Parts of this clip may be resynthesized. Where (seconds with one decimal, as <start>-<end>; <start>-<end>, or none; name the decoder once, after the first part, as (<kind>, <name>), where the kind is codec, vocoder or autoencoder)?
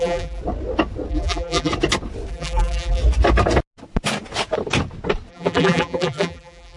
0.0-0.4 (vocoder, BigVGAN v2); 1.1-1.7; 2.3-3.0; 5.3-6.8